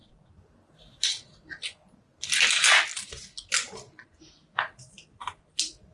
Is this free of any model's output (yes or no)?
yes